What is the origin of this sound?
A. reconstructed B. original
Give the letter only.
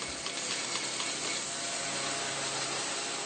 B